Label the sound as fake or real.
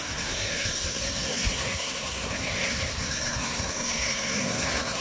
fake